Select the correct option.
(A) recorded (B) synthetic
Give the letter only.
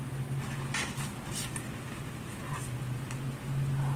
A